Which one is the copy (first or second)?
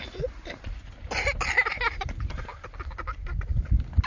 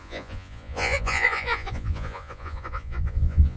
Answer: second